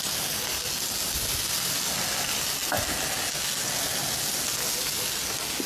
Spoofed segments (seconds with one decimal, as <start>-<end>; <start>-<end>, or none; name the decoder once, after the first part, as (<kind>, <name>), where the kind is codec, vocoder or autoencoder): none